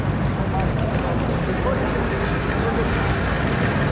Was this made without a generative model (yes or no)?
yes